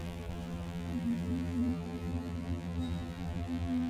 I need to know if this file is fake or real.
fake